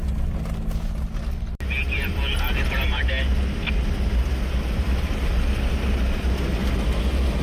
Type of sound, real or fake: real